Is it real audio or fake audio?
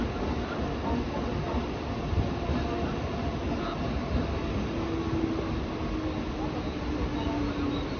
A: real